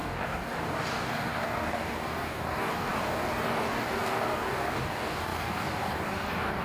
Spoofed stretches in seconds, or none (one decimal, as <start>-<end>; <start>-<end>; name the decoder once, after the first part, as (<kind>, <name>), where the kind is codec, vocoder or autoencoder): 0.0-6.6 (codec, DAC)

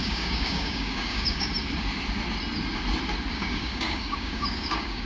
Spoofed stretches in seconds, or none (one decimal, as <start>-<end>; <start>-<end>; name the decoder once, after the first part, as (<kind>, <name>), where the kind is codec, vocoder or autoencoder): 0.0-1.5 (codec, DAC); 3.3-5.1

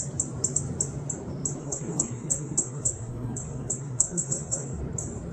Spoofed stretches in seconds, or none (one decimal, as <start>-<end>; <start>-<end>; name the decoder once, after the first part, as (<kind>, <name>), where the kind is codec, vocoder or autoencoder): 1.6-4.8 (codec, SNAC)